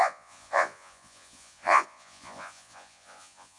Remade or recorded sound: remade